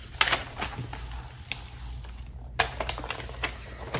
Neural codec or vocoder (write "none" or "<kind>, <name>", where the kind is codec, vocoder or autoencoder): none